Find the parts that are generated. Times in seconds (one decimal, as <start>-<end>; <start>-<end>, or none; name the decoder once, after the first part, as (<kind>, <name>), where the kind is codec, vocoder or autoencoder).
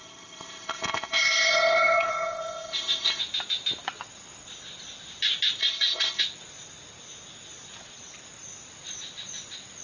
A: 0.0-3.2 (codec, ZipCodec); 5.6-6.2